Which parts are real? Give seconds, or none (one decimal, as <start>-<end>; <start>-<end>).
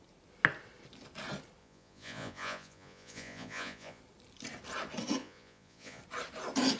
0.0-1.6; 4.0-5.2; 6.0-6.8